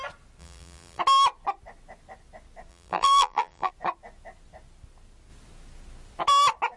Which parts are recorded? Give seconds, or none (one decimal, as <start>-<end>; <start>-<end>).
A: 0.0-0.4; 1.0-2.7; 3.7-6.8